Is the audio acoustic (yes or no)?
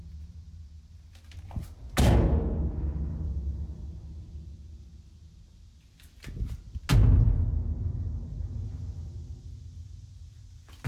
yes